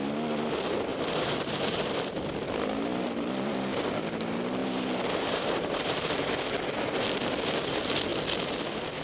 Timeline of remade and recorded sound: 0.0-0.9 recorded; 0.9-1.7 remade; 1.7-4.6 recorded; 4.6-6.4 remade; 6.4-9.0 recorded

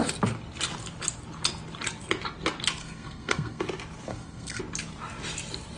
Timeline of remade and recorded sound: 0.0-2.8 recorded; 2.8-3.6 remade; 3.6-4.1 recorded; 4.1-4.6 remade; 4.6-5.8 recorded